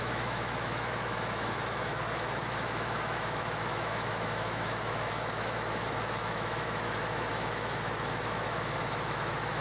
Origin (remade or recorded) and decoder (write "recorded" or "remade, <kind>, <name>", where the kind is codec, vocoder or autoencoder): remade, autoencoder, DAC-VAE